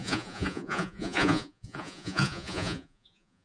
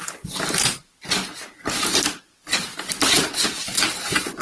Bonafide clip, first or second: second